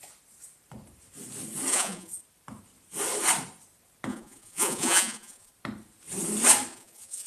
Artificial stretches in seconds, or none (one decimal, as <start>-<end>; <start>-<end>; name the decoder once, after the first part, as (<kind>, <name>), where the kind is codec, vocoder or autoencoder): 1.7-2.2 (vocoder, Vocos); 4.1-5.5; 6.7-7.3